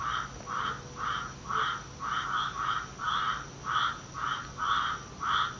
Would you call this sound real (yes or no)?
yes